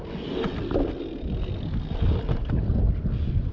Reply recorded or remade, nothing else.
recorded